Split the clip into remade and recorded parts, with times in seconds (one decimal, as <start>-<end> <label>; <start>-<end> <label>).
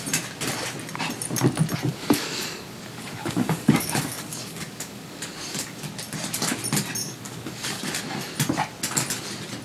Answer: 0.0-1.9 recorded; 1.9-5.9 remade; 5.9-7.0 recorded; 7.0-7.8 remade; 7.8-9.6 recorded